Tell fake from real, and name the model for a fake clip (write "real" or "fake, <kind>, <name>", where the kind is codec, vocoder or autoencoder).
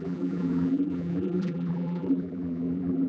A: fake, vocoder, BigVGAN v2